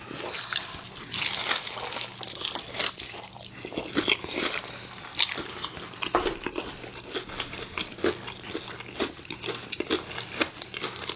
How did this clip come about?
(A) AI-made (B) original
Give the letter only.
B